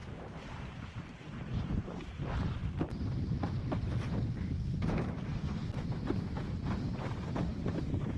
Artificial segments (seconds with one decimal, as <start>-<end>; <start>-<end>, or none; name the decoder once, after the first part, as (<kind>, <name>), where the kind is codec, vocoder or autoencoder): 0.0-2.0 (vocoder, BigVGAN v2); 7.5-8.2